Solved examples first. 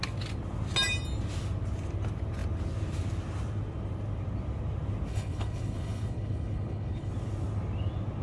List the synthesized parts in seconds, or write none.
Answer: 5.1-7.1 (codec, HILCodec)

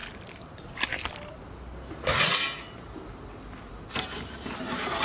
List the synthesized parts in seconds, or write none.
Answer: none

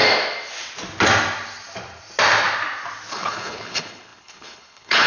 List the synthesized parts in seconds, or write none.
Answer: 3.1-5.1 (codec, HILCodec)

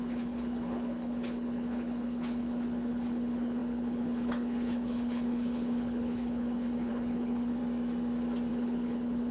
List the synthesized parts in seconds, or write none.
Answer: 0.0-7.6 (codec, HILCodec); 8.5-9.3